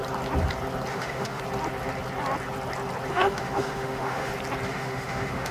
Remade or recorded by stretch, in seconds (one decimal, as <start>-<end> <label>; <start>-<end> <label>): 0.0-0.9 recorded; 0.9-1.4 remade; 1.4-3.1 recorded; 3.1-4.3 remade; 4.3-4.7 recorded; 4.7-5.5 remade